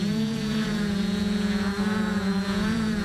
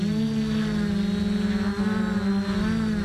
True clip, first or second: second